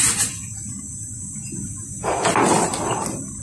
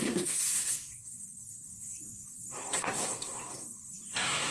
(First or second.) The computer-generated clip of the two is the second